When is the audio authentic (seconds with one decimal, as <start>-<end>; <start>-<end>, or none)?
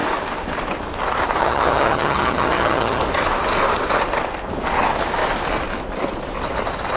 0.0-1.4; 3.0-7.0